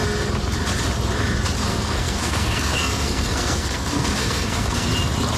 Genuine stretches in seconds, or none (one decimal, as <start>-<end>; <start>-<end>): 0.0-1.7; 4.9-5.4